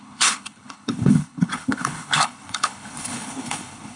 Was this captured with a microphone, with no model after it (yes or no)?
no